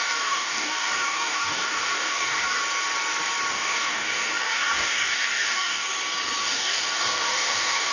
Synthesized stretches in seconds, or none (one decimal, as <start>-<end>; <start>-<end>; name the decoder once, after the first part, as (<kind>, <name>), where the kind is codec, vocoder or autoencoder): 0.0-2.6 (codec, DAC); 3.5-5.9; 6.4-7.9